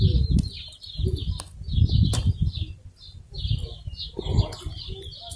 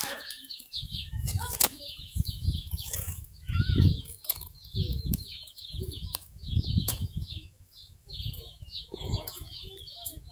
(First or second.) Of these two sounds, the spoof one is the second